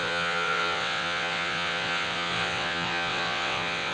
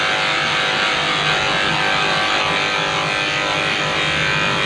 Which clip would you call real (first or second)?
second